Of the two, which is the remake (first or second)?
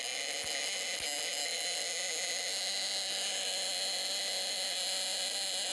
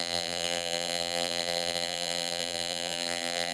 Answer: second